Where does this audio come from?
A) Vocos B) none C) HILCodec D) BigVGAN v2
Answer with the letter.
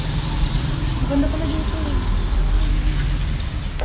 B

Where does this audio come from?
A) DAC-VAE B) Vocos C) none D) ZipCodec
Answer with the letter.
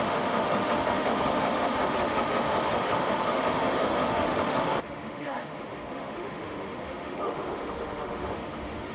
A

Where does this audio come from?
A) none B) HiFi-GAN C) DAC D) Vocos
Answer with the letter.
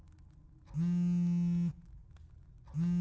A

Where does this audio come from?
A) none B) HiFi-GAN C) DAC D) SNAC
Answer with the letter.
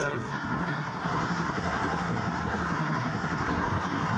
D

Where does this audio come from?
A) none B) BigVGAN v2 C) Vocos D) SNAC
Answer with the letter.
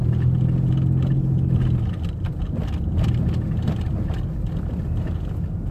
A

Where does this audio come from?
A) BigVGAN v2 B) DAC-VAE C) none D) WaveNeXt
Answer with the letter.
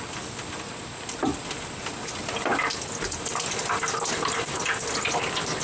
C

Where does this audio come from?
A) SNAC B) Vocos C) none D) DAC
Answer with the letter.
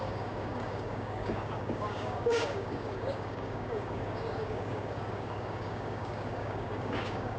D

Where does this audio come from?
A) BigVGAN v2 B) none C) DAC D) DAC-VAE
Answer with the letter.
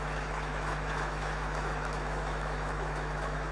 D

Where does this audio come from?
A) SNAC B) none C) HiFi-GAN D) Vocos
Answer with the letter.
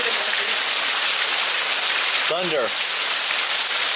B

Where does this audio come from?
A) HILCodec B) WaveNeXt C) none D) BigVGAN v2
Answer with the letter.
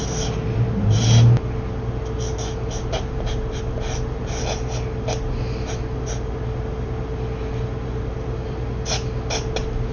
C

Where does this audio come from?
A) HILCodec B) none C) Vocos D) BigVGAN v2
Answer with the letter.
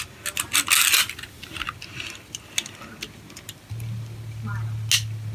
B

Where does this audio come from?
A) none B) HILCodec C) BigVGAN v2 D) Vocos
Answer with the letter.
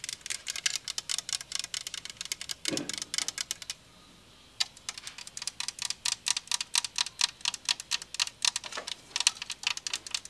A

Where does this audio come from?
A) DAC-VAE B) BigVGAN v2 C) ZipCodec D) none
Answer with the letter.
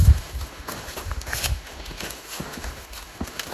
A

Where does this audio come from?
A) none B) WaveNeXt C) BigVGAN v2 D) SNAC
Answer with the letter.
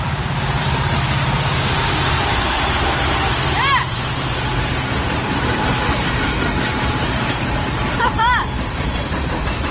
C